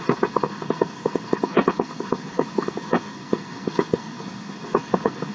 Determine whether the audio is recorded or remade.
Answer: remade